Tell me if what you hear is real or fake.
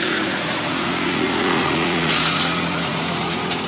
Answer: fake